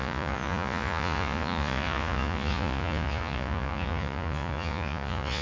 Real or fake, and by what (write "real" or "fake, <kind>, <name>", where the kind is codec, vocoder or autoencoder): fake, vocoder, Vocos